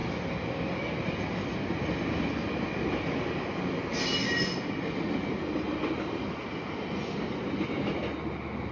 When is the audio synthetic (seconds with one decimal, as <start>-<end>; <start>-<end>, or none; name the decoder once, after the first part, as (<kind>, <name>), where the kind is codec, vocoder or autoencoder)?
none